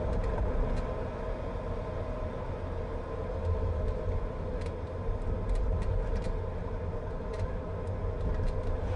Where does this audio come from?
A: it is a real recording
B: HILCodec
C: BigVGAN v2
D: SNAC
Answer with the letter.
A